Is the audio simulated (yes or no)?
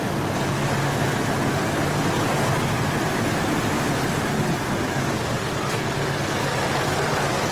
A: no